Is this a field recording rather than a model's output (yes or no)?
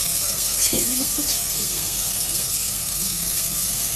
no